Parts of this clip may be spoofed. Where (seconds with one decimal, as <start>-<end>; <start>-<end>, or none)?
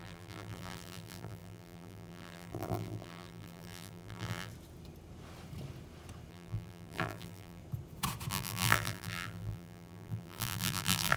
0.0-4.5; 6.3-7.6; 8.3-11.2